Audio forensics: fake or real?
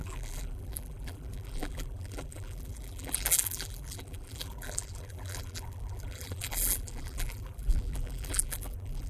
fake